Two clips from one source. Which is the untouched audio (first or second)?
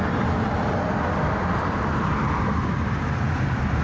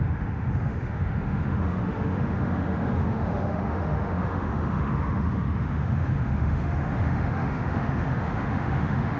first